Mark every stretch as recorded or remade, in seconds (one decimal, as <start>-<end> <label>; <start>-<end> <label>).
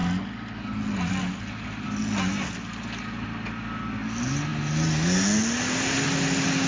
0.0-6.7 recorded